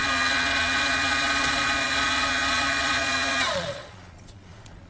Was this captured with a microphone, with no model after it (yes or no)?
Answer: no